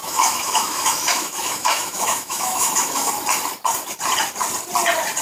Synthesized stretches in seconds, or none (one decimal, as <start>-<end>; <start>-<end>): 0.0-3.1